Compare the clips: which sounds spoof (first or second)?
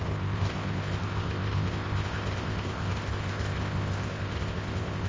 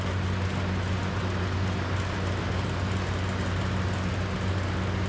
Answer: first